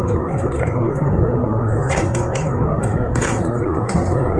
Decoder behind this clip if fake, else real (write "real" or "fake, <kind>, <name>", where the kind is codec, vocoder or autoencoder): fake, codec, SNAC